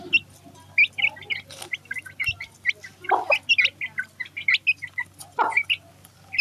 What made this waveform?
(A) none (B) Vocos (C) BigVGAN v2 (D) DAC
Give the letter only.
A